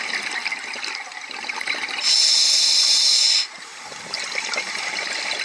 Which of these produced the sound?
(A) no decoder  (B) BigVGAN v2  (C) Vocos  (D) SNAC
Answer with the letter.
A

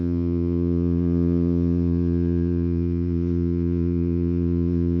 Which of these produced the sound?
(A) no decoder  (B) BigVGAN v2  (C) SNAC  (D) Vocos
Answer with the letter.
D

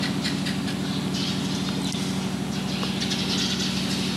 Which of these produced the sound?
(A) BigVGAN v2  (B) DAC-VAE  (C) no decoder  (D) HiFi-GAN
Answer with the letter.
C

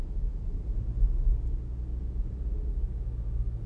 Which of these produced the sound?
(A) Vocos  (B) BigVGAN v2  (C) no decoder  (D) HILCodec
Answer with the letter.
C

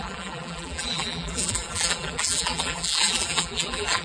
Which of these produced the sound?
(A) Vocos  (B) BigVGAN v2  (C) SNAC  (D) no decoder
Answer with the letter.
B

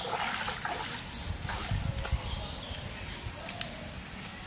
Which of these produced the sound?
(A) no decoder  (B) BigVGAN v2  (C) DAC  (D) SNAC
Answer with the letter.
A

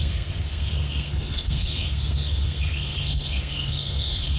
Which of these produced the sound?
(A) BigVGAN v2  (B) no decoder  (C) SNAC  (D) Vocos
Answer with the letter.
C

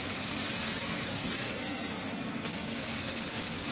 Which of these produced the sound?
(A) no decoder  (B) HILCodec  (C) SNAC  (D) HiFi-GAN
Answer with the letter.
C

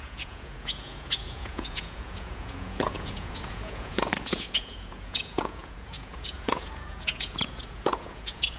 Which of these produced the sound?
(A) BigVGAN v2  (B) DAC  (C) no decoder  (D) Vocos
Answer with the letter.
D